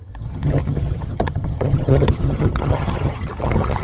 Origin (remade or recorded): remade